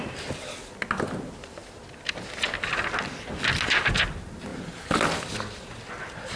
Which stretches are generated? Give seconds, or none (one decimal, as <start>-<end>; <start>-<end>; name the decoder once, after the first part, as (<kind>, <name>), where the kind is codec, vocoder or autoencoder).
none